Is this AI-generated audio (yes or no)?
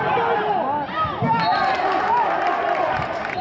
no